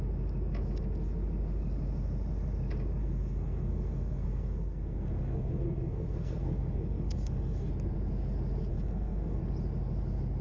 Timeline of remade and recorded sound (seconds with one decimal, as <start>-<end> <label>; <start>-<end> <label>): 0.0-3.0 recorded; 3.0-7.7 remade; 7.7-8.7 recorded; 8.7-9.4 remade; 9.4-10.4 recorded